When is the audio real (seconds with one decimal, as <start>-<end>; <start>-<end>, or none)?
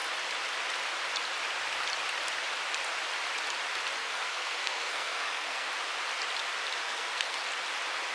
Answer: 0.0-4.0; 5.7-6.8; 7.4-8.1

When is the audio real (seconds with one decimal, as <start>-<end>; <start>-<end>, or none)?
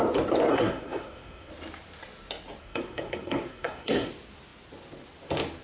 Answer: 0.0-0.5; 1.5-2.6; 4.1-5.6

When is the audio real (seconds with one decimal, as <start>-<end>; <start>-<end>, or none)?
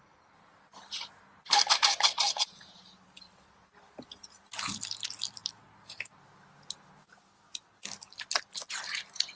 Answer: 0.0-9.3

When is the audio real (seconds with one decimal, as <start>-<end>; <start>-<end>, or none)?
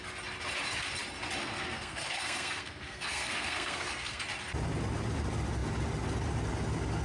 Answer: 0.0-1.4; 4.2-7.0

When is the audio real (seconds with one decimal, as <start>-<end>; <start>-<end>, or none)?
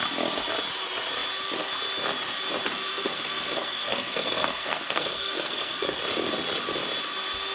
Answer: 0.0-2.9; 6.0-7.5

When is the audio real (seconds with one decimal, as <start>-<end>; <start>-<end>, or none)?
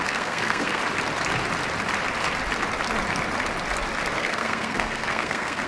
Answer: 0.8-4.2